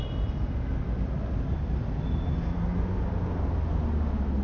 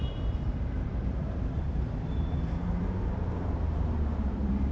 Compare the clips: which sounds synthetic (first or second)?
second